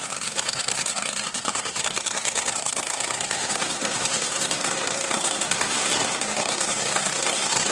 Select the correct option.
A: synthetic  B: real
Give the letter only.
A